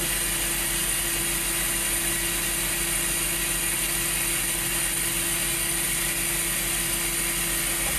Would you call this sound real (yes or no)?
yes